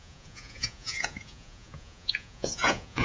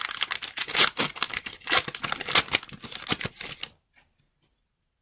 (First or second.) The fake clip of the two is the first